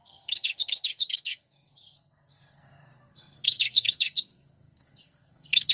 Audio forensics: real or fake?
fake